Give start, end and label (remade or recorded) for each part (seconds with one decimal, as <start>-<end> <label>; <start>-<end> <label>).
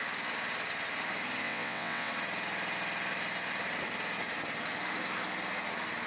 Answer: 0.0-1.4 recorded; 1.4-2.1 remade; 2.1-6.1 recorded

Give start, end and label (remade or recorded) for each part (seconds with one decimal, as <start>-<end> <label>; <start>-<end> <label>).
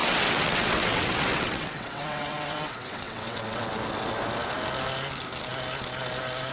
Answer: 0.0-3.7 remade; 3.7-6.5 recorded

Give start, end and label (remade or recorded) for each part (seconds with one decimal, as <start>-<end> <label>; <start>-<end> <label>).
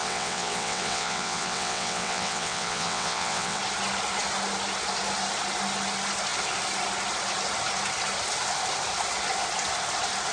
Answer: 0.0-3.6 remade; 3.6-10.3 recorded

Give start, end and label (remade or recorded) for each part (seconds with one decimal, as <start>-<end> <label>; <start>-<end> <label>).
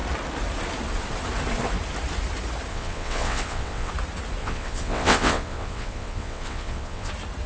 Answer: 0.0-2.7 recorded; 2.7-3.9 remade; 3.9-4.4 recorded; 4.4-7.1 remade; 7.1-7.5 recorded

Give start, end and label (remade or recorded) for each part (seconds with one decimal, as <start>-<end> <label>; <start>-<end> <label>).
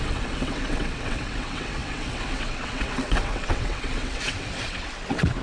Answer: 0.0-5.4 remade